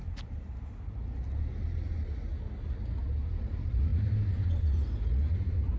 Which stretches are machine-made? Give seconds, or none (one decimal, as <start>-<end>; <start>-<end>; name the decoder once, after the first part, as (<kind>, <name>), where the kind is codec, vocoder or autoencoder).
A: none